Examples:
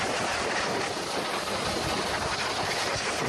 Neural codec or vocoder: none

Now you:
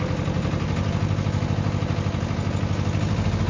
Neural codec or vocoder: none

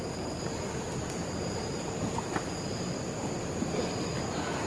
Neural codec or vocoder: none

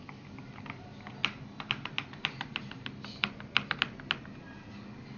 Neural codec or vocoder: none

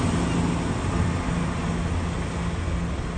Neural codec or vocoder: none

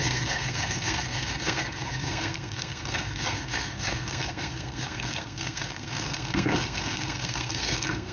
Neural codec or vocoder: codec, SNAC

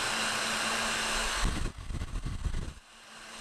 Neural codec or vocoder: none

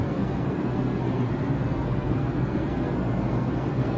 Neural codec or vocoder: codec, SNAC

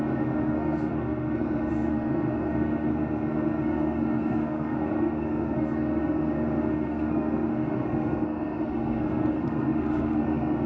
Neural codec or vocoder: codec, SNAC